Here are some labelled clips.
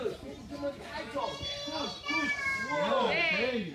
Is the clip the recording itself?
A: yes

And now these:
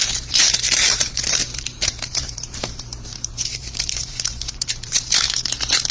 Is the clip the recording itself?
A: no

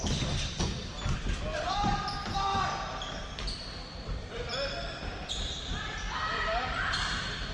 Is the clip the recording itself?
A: no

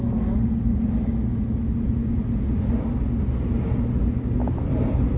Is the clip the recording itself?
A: yes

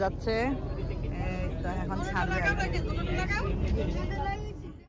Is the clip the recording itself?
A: yes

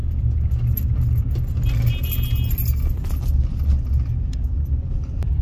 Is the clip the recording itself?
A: yes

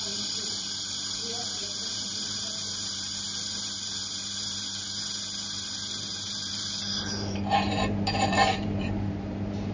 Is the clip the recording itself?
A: no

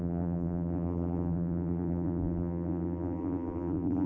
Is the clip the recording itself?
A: no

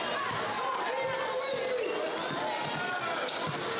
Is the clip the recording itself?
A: yes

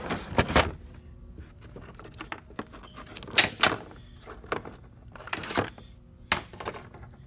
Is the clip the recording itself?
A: yes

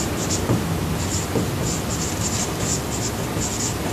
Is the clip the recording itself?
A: yes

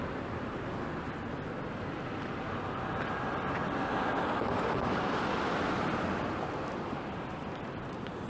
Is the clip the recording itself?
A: yes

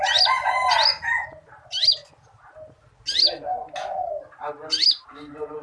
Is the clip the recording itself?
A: yes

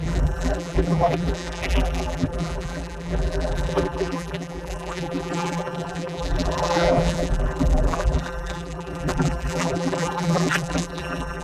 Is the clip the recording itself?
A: no